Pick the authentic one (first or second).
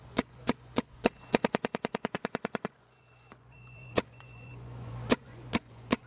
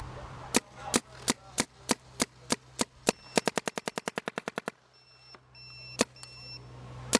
second